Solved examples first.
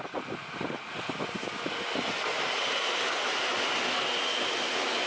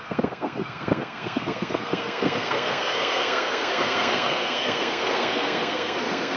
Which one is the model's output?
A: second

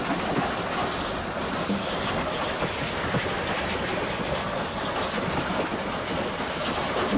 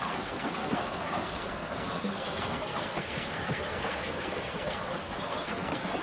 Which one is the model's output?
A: second